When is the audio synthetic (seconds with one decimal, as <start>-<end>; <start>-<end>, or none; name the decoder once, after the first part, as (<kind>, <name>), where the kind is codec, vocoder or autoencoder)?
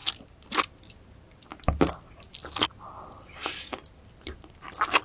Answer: none